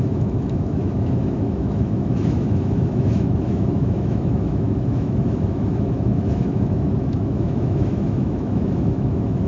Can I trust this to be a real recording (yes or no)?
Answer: no